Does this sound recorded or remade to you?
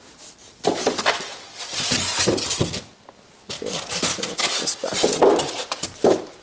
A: recorded